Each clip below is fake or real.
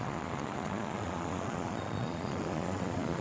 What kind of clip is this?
fake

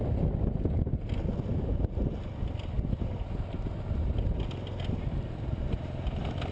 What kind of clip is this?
real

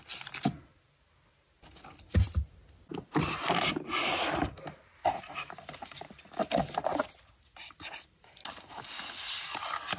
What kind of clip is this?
real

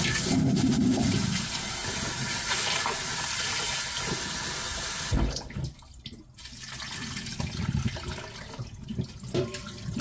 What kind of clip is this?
real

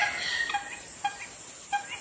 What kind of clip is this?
real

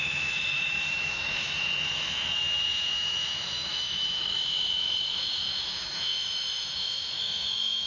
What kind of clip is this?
fake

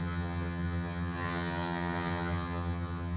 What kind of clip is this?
fake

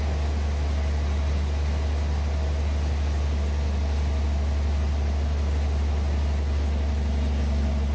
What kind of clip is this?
real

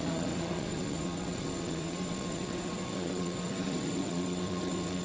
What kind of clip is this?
fake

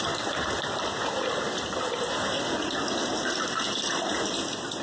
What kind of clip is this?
real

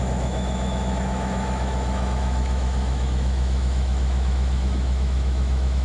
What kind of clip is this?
fake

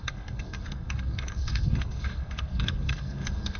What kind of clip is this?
fake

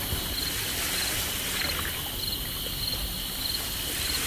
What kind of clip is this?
real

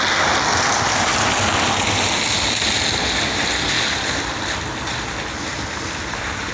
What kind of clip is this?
real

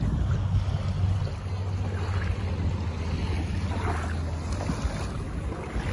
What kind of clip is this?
real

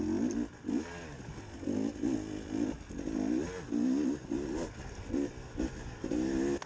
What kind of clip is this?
real